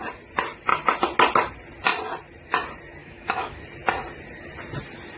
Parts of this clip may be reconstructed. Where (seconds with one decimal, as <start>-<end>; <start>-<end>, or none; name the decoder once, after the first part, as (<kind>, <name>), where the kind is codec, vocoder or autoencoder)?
3.0-3.6 (autoencoder, DAC-VAE)